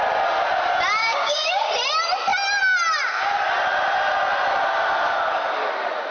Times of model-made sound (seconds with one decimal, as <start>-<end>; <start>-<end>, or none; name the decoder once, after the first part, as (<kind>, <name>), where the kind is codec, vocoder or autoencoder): 1.0-1.7 (codec, DAC)